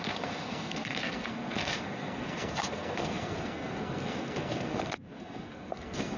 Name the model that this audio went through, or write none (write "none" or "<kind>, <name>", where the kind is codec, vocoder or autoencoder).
codec, SNAC